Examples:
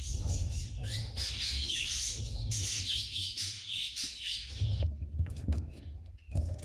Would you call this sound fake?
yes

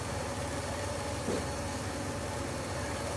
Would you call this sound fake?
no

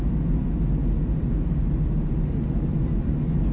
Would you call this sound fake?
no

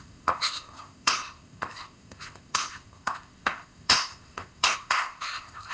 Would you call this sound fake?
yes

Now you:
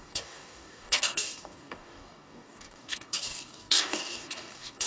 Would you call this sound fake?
yes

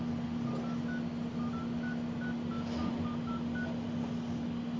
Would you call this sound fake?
no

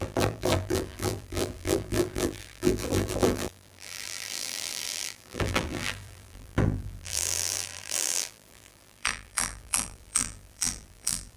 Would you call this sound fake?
yes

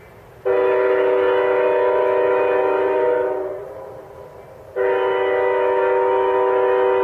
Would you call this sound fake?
no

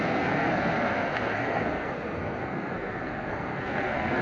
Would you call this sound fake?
yes